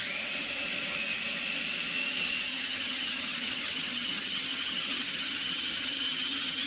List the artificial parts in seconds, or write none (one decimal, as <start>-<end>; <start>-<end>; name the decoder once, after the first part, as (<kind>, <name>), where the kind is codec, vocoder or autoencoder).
2.5-6.7 (vocoder, HiFi-GAN)